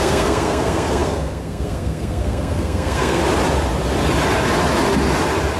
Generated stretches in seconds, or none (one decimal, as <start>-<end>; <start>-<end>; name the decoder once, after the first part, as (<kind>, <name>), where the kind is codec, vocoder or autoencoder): 0.0-3.2 (codec, SNAC)